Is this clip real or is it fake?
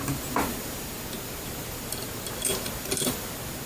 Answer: real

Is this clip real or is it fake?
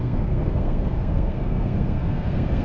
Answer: fake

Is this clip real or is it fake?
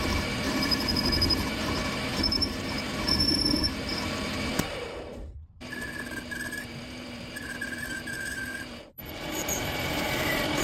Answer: fake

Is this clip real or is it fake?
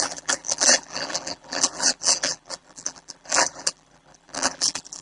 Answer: fake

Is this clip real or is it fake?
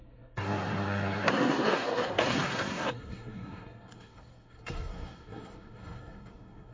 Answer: fake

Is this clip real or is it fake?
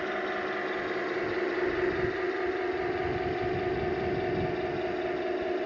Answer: real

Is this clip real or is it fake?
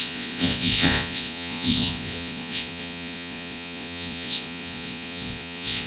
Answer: fake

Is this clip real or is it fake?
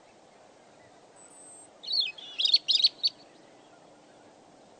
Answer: real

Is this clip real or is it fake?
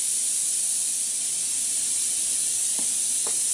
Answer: fake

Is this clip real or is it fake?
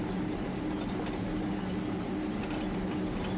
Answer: real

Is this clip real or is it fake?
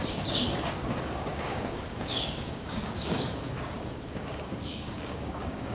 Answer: fake